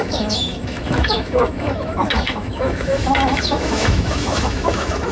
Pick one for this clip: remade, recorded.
remade